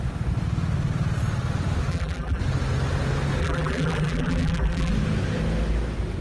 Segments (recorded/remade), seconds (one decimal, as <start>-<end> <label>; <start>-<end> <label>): 0.0-1.9 recorded; 1.9-2.4 remade; 2.4-3.4 recorded; 3.4-4.9 remade; 4.9-6.2 recorded